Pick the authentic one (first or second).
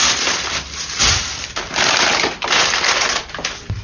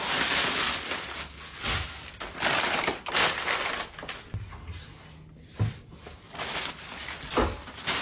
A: second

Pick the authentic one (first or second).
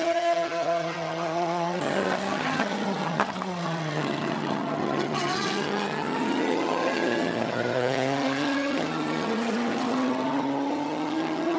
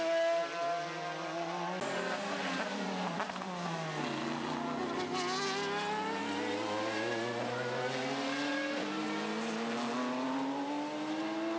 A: second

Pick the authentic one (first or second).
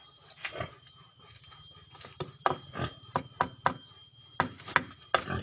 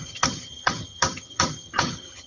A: first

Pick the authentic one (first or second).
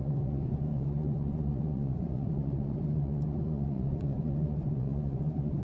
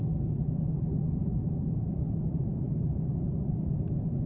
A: second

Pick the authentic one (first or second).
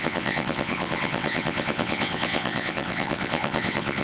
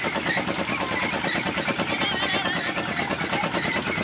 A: second